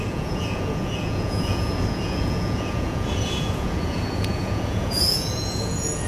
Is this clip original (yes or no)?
no